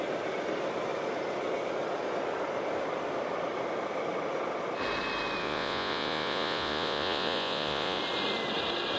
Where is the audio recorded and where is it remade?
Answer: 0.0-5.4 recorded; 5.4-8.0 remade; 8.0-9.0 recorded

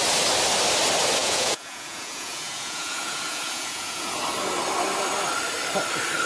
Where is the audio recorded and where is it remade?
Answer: 0.0-1.2 recorded; 1.2-4.2 remade; 4.2-6.3 recorded